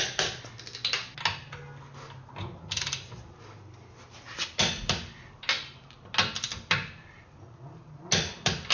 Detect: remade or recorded recorded